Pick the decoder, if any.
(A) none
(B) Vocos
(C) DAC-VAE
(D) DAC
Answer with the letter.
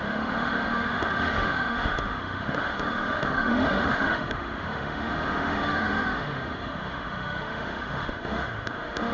C